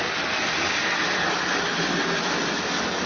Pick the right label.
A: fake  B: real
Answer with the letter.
A